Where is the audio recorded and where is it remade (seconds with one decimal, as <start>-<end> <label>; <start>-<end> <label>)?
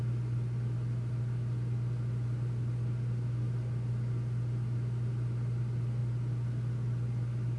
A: 0.0-7.6 recorded